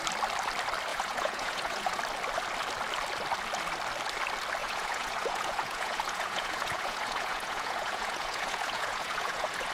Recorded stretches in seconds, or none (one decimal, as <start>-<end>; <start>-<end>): 0.0-0.9; 2.0-4.6